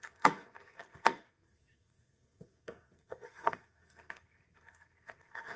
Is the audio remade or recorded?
remade